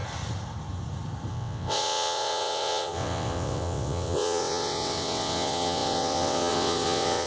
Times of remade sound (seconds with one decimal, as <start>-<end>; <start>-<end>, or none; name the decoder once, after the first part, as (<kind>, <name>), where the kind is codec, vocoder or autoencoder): 1.3-7.3 (vocoder, WaveNeXt)